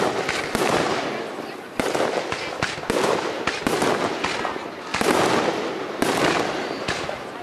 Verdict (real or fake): real